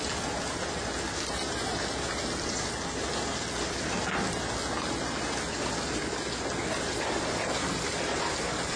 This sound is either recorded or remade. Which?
recorded